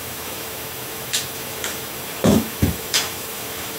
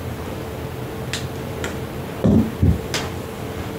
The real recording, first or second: second